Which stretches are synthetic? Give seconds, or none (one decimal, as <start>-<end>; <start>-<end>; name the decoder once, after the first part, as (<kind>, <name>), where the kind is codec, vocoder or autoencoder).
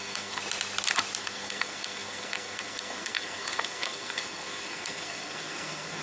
0.0-0.4 (codec, SNAC); 1.2-6.0